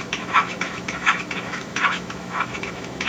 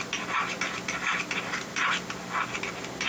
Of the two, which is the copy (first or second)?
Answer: first